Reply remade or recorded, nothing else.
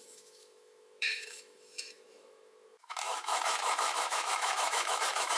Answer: remade